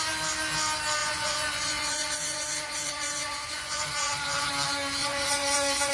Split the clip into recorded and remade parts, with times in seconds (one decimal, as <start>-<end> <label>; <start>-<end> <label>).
0.0-1.0 recorded; 1.0-4.5 remade; 4.5-5.0 recorded; 5.0-5.9 remade